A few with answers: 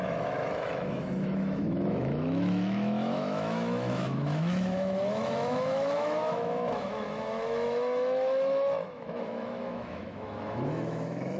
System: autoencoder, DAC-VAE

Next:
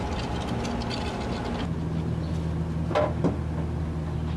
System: none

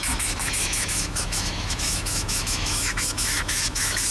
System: autoencoder, DAC-VAE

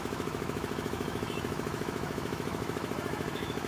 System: autoencoder, DAC-VAE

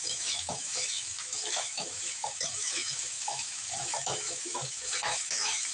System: autoencoder, DAC-VAE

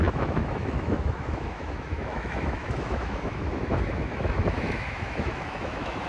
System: autoencoder, DAC-VAE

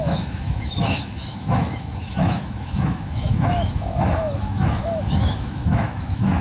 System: autoencoder, DAC-VAE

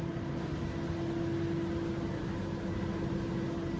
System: none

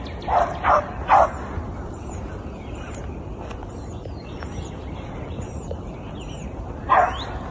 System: none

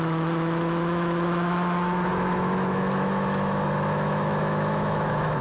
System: autoencoder, DAC-VAE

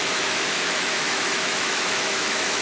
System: autoencoder, DAC-VAE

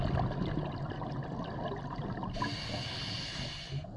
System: none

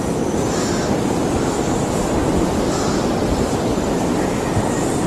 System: none